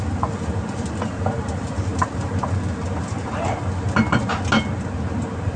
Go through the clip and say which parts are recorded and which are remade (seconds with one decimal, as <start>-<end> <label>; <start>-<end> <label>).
0.0-5.6 recorded